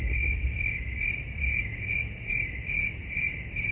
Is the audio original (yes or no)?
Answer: yes